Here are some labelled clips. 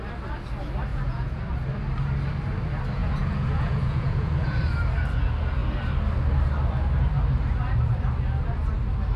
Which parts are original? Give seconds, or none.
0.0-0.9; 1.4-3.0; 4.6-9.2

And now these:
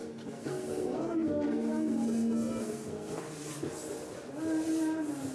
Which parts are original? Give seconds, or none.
3.2-5.3

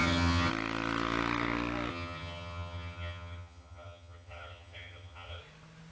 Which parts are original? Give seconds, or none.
0.5-1.9; 5.4-5.9

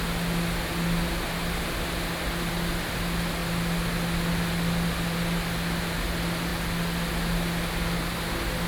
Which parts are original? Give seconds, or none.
0.0-8.7